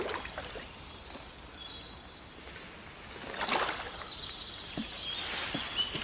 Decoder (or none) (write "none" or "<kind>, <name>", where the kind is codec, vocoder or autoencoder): none